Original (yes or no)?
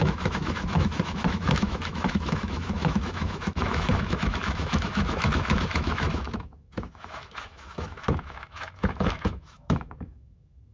no